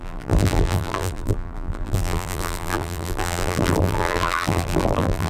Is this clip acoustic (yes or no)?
no